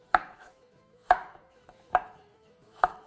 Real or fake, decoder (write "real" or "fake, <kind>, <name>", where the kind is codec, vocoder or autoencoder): fake, autoencoder, DAC-VAE